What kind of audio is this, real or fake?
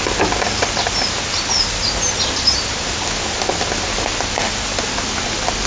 real